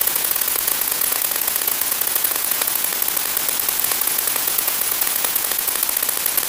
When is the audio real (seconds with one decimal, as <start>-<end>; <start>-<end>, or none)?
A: 2.9-3.8; 5.8-6.5